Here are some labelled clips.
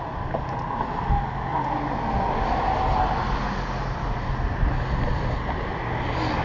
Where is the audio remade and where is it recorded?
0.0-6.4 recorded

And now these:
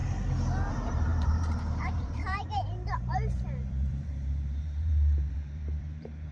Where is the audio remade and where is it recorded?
0.0-0.7 recorded; 0.7-6.3 remade

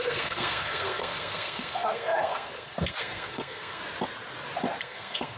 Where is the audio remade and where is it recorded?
0.0-3.8 remade; 3.8-4.8 recorded; 4.8-5.4 remade

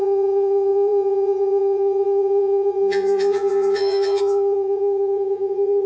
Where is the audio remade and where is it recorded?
0.0-5.9 remade

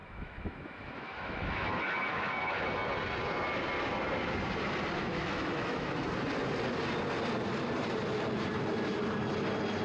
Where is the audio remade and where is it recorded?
0.0-2.7 remade; 2.7-5.0 recorded; 5.0-6.0 remade; 6.0-9.8 recorded

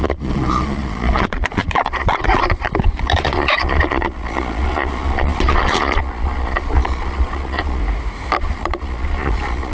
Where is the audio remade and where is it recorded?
0.0-7.8 remade; 7.8-8.4 recorded; 8.4-9.7 remade

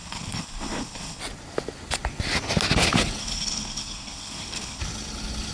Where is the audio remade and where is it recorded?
0.0-1.2 remade; 1.2-3.2 recorded; 3.2-4.8 remade; 4.8-5.5 recorded

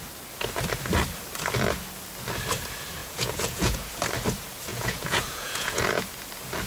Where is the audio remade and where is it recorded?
0.0-3.0 recorded; 3.0-3.9 remade; 3.9-4.7 recorded; 4.7-6.0 remade; 6.0-6.7 recorded